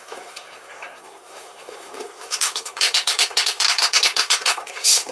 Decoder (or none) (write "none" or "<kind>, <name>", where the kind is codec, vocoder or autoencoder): codec, SNAC